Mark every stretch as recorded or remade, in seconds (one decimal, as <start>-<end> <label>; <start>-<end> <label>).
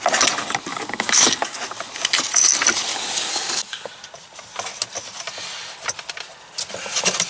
0.0-0.7 recorded; 0.7-1.6 remade; 1.6-2.9 recorded; 2.9-3.9 remade; 3.9-7.3 recorded